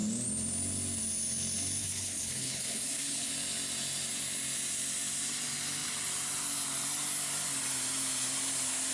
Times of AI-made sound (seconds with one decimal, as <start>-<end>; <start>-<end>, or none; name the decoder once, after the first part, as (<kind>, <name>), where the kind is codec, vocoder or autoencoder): 1.8-3.3 (codec, HILCodec)